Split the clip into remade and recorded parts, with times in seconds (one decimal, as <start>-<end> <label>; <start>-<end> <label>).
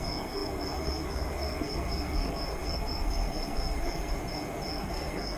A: 0.0-4.1 remade; 4.1-4.7 recorded; 4.7-5.4 remade